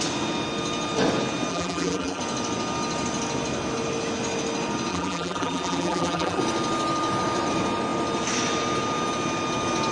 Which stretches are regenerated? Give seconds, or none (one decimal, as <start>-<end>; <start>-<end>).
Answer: 1.5-2.2; 4.9-6.4